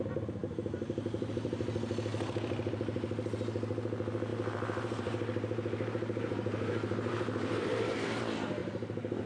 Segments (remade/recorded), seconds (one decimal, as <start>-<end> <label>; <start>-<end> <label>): 0.0-0.4 recorded; 0.4-1.3 remade; 1.3-4.3 recorded; 4.3-8.2 remade; 8.2-8.6 recorded; 8.6-9.3 remade